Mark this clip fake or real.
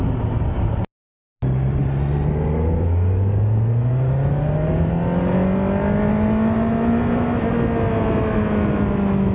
real